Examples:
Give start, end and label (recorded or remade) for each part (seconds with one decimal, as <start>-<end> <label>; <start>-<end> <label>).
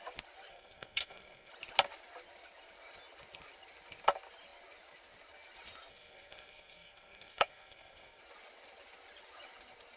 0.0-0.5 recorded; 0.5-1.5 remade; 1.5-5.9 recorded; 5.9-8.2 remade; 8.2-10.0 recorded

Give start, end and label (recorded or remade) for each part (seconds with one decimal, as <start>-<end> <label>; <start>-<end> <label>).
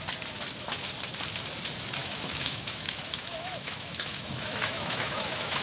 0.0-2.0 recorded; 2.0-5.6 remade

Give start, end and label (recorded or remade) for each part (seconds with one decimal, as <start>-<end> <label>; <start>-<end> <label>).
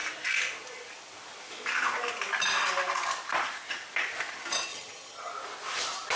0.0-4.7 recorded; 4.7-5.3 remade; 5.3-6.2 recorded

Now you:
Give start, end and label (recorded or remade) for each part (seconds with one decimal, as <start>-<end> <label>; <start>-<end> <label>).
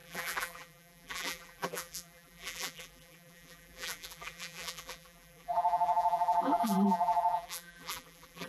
0.0-8.5 remade